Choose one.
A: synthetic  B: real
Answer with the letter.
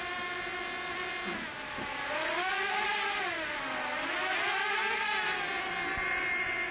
B